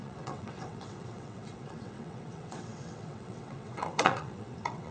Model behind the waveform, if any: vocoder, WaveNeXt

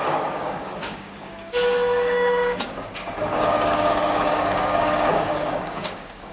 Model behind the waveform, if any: codec, DAC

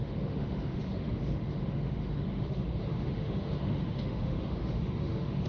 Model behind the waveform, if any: autoencoder, DAC-VAE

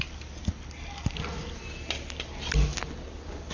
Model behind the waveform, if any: vocoder, BigVGAN v2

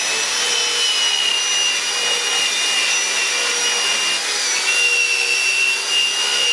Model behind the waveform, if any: none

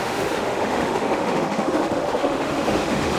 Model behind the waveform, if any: autoencoder, DAC-VAE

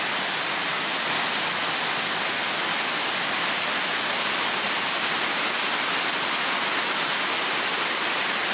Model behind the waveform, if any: none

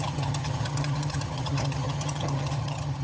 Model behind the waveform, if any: vocoder, HiFi-GAN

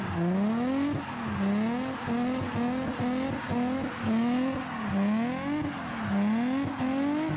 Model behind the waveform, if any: none